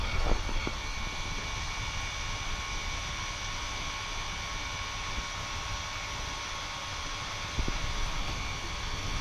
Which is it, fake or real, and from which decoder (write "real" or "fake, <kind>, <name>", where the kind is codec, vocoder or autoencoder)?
real